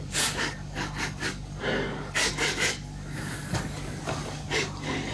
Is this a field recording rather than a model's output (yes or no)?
no